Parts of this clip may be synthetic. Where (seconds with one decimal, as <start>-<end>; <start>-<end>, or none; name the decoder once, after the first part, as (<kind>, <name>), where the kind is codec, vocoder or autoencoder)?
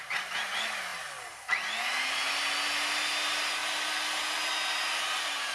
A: none